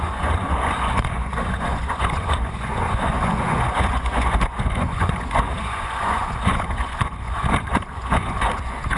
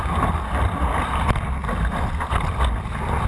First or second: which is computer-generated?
first